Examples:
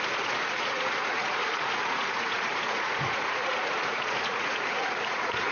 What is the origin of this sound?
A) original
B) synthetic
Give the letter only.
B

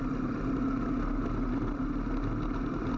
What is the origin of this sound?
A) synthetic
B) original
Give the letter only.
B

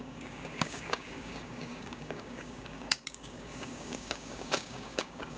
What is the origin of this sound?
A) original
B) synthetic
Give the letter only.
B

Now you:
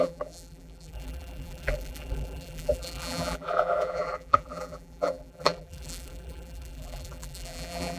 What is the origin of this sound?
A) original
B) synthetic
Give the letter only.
B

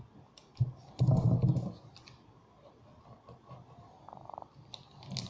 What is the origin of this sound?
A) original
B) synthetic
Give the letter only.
A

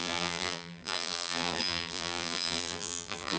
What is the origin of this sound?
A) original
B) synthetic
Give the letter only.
B